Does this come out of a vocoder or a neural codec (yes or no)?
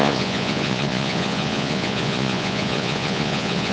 yes